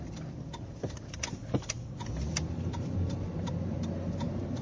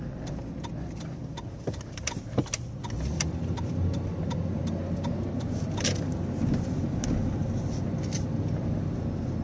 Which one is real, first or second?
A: second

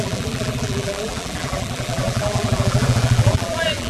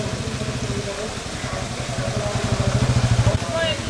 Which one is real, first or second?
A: second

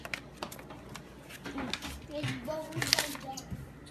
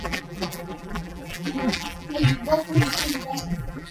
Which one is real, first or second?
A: first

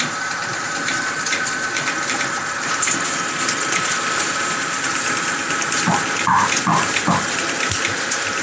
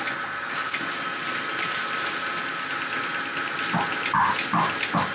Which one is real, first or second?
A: second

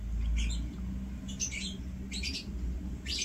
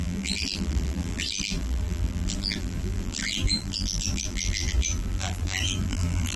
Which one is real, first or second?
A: first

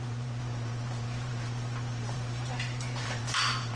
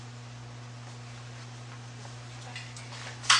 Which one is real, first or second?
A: second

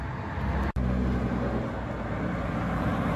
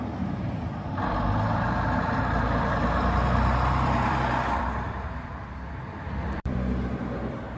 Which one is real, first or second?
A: first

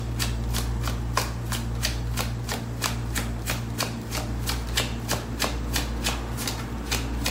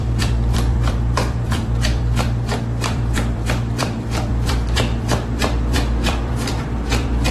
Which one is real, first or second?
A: first